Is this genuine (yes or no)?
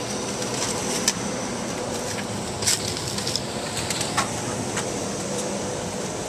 no